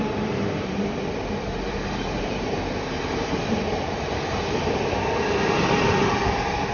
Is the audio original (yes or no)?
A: no